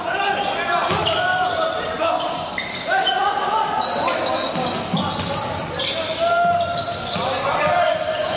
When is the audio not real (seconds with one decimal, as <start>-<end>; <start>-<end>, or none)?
none